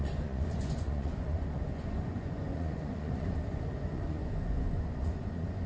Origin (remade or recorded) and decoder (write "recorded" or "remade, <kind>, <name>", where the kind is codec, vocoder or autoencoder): remade, vocoder, Vocos